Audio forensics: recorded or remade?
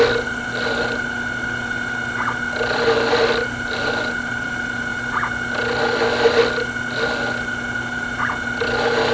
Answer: recorded